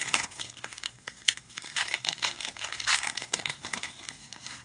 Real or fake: fake